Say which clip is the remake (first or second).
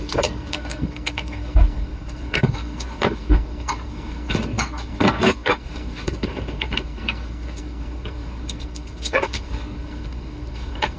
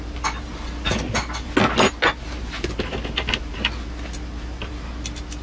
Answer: first